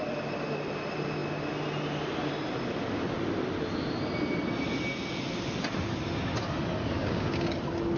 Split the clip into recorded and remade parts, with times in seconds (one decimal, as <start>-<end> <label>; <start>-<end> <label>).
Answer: 0.0-7.0 recorded; 7.0-7.5 remade; 7.5-8.0 recorded